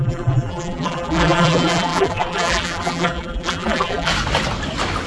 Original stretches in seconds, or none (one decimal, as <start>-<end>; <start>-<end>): 4.1-5.1